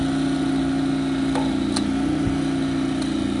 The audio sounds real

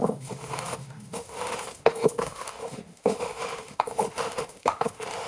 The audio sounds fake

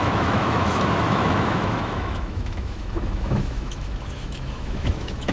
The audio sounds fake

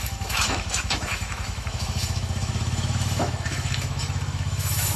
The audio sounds fake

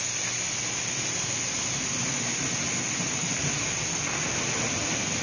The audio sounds real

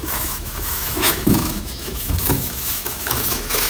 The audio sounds fake